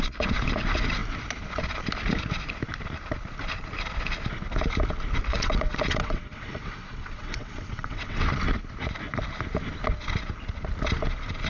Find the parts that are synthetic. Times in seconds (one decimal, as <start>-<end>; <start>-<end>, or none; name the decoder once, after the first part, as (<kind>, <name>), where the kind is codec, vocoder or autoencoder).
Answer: 5.3-8.2 (vocoder, WaveNeXt)

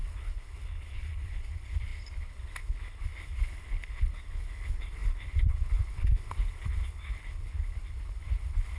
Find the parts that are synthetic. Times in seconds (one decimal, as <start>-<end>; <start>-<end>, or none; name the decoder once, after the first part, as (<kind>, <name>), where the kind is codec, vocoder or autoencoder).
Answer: 0.0-8.8 (codec, HILCodec)

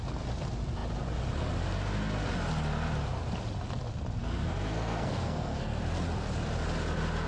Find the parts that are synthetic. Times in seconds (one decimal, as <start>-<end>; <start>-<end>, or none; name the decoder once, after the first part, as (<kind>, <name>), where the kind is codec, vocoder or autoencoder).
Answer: 4.2-5.8 (codec, SNAC)

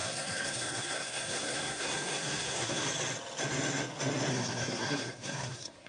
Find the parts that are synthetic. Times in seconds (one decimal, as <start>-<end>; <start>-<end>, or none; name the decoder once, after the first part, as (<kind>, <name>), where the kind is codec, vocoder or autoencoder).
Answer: 0.0-2.9 (codec, SNAC); 4.3-5.9